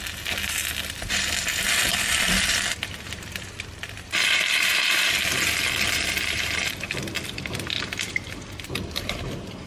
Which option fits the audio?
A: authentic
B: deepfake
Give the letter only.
B